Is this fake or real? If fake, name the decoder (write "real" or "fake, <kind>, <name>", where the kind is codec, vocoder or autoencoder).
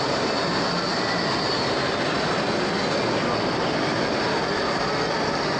real